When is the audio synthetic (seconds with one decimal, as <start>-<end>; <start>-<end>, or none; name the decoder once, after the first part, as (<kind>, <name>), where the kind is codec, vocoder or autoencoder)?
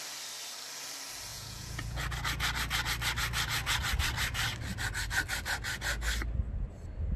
1.3-2.0 (vocoder, Vocos)